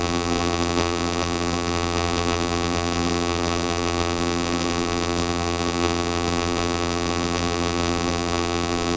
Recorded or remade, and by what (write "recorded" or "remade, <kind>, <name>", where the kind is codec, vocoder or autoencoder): remade, vocoder, BigVGAN v2